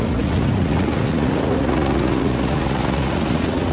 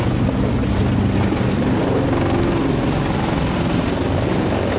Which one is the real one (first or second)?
second